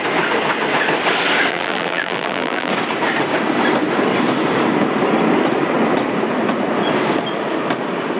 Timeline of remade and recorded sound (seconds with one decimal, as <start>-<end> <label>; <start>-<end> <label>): 0.0-1.5 recorded; 1.5-2.7 remade; 2.7-8.2 recorded